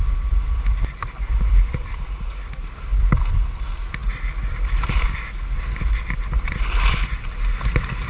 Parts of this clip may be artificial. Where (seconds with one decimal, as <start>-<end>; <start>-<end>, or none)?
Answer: none